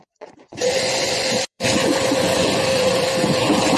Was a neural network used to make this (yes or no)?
yes